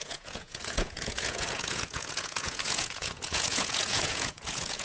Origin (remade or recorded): remade